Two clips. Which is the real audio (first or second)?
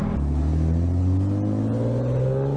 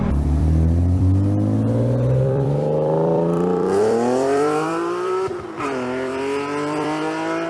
first